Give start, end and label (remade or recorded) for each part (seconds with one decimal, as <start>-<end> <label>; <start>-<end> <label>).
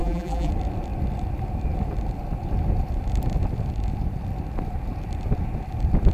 0.0-0.5 remade; 0.5-6.1 recorded